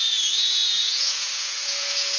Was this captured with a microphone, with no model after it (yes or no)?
no